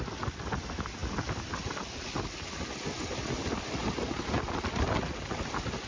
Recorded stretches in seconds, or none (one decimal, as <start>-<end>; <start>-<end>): 0.0-5.9